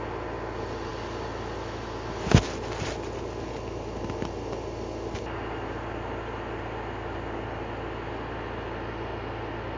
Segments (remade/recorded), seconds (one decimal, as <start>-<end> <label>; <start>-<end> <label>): 0.0-9.8 recorded